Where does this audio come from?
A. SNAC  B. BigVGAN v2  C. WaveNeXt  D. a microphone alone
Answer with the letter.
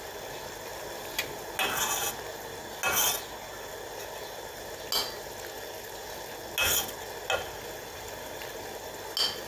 D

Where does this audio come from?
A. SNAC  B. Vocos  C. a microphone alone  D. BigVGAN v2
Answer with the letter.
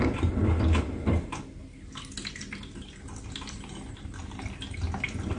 C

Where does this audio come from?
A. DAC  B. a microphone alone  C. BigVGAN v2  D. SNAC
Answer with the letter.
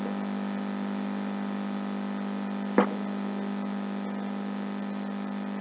B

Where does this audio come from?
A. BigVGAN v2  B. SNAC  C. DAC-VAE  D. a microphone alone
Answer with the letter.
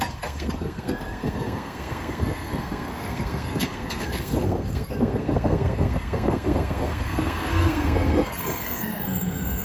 B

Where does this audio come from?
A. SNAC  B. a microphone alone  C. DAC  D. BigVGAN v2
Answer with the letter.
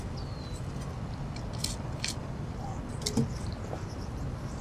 B